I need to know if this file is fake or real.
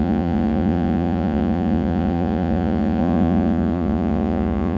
fake